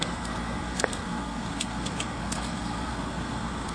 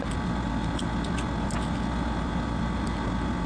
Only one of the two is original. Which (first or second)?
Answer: second